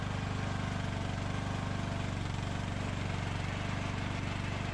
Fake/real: real